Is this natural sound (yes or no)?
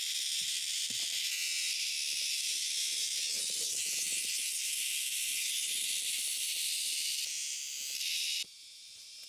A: no